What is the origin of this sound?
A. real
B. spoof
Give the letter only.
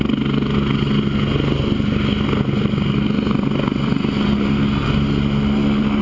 A